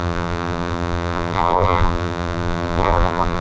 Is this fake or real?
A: fake